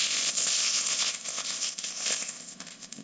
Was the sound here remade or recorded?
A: remade